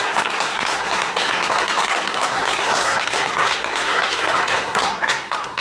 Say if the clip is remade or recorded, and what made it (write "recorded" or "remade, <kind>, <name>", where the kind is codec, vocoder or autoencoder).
remade, codec, SNAC